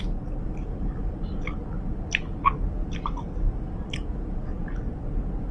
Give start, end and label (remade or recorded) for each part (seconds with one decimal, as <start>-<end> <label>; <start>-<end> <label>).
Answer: 0.0-5.5 recorded